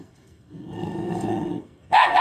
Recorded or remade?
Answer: remade